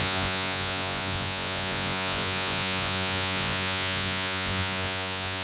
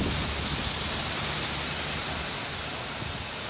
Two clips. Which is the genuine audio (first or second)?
second